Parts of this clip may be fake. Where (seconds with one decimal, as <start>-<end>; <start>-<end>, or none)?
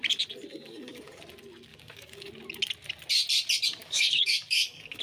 0.5-1.2; 1.7-2.3; 3.8-5.0